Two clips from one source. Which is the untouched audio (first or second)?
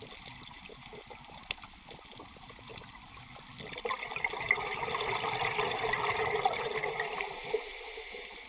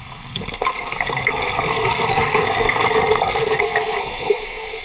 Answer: first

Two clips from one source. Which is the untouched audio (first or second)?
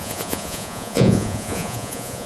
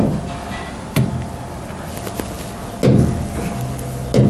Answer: second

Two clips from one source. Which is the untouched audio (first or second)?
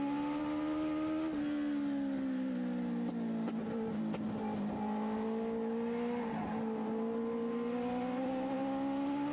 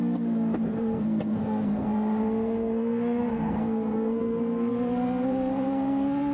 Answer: first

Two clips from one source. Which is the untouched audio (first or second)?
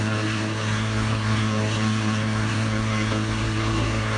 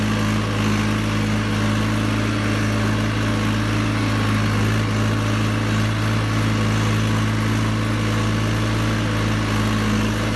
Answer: second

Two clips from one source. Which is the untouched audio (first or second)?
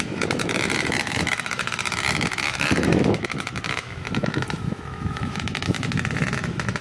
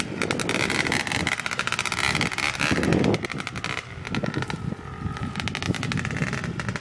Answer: second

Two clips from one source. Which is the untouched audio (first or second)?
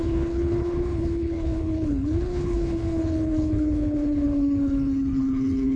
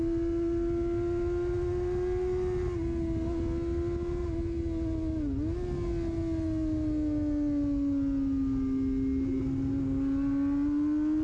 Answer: second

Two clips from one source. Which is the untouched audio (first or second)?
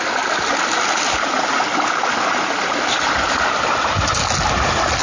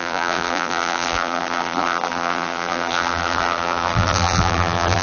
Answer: first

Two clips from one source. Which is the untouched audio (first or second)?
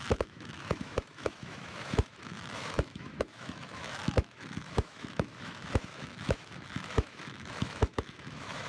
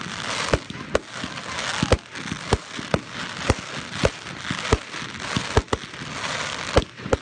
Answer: second